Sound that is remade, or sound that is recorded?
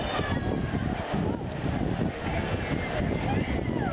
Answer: recorded